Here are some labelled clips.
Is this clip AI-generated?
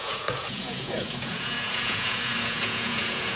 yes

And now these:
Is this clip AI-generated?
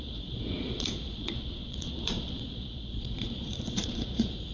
yes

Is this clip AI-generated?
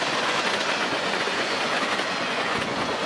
yes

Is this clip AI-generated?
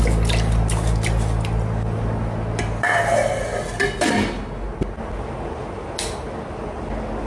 no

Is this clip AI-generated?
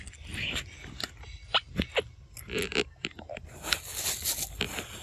no